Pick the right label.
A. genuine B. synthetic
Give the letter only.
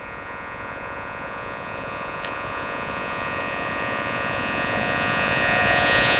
B